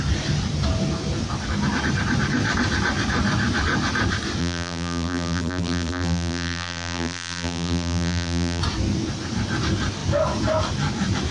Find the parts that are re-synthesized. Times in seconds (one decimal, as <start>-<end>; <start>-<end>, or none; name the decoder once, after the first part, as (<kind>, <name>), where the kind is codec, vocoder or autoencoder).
4.4-8.6 (vocoder, BigVGAN v2)